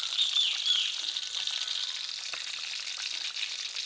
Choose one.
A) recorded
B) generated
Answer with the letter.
A